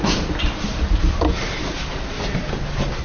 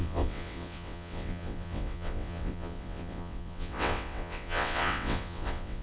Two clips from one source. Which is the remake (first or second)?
second